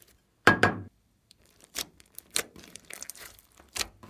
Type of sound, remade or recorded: remade